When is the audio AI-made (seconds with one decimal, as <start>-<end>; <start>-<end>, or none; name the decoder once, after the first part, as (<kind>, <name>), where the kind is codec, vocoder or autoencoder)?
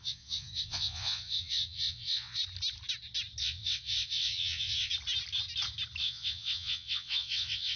0.0-2.4 (vocoder, WaveNeXt); 3.4-4.9; 6.0-7.8